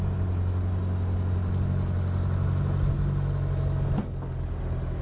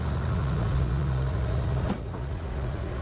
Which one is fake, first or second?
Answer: second